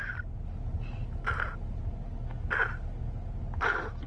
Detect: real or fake real